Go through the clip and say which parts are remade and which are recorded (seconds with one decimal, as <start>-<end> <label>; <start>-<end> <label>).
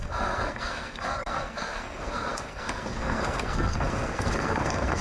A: 0.0-5.0 remade